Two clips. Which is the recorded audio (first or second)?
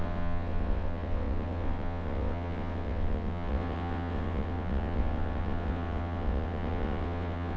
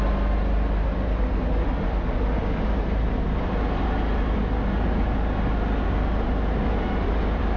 second